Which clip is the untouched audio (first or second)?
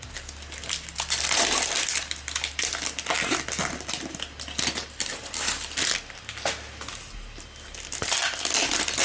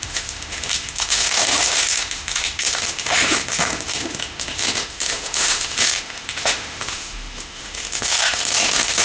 first